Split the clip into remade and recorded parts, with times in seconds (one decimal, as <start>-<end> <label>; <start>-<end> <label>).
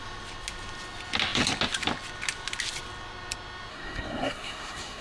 0.0-3.7 recorded; 3.7-5.0 remade